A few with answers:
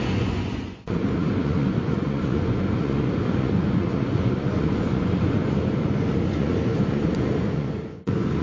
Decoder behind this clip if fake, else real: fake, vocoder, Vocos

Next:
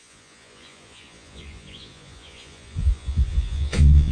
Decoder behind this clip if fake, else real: fake, vocoder, Vocos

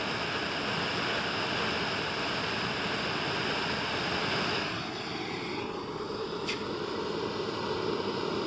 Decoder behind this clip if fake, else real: real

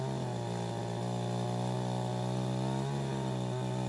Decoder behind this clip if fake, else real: real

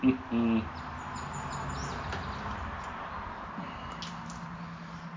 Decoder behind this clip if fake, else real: real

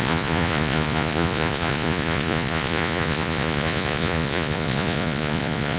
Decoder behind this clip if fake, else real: fake, vocoder, Vocos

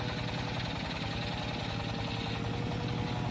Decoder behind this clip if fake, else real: real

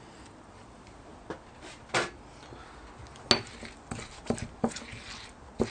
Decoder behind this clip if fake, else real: real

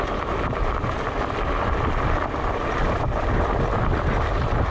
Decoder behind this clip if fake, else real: real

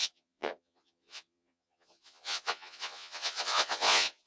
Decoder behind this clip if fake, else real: fake, vocoder, Vocos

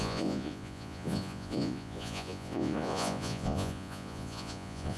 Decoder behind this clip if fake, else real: fake, vocoder, Vocos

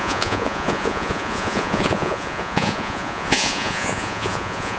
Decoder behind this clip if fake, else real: fake, vocoder, Vocos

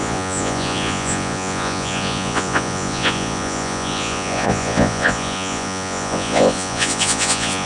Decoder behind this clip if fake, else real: fake, vocoder, Vocos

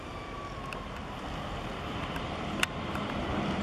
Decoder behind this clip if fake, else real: real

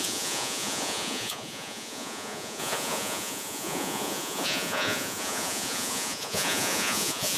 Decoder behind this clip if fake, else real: fake, vocoder, Vocos